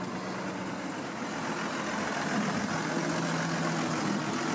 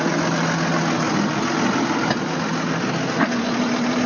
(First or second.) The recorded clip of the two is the second